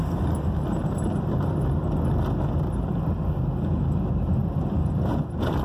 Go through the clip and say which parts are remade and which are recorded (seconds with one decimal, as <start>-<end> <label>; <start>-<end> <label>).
0.0-5.6 recorded